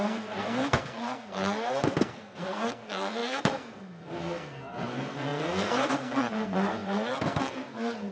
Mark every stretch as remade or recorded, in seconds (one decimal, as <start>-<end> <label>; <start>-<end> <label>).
0.0-8.1 remade